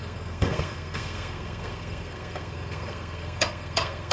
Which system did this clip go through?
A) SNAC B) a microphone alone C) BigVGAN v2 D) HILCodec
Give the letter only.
A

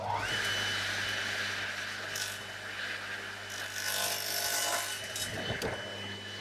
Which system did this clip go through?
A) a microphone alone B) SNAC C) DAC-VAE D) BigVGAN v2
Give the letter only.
A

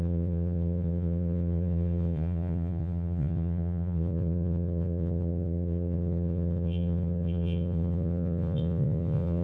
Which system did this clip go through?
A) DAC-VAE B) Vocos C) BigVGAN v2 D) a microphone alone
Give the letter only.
B